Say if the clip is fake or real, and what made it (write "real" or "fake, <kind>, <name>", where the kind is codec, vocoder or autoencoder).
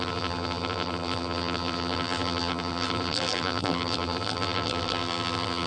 fake, vocoder, BigVGAN v2